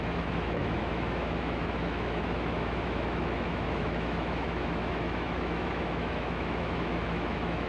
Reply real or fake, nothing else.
fake